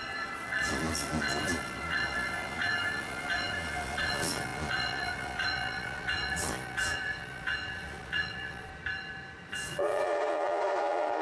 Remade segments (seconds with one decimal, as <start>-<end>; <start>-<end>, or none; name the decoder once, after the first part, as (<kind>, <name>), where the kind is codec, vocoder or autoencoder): 0.0-8.7 (vocoder, Vocos); 9.5-11.2